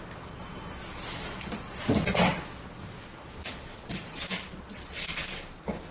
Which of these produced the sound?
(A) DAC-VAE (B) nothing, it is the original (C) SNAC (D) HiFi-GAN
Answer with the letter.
B